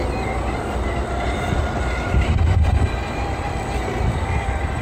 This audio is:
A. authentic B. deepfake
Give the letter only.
A